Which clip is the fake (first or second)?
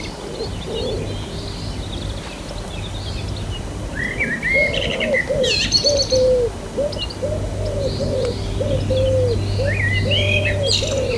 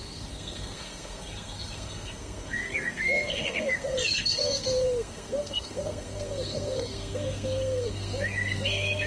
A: second